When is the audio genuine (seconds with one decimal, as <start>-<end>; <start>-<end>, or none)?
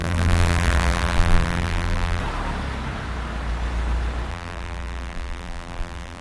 2.2-4.3